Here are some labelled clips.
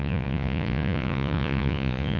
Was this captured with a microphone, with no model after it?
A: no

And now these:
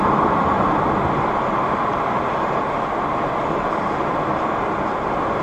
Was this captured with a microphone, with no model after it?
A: yes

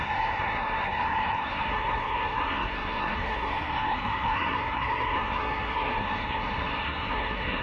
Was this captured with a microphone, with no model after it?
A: no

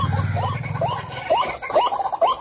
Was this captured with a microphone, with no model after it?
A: yes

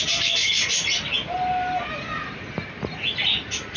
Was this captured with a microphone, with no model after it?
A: yes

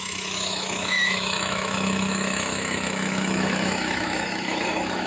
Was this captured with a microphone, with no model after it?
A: no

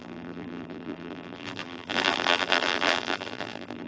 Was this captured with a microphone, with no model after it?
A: no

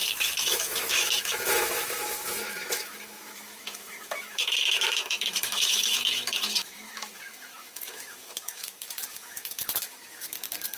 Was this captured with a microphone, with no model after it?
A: no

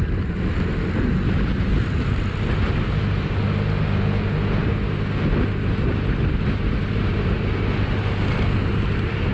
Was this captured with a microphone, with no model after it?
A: yes